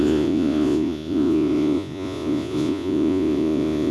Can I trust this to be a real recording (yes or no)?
no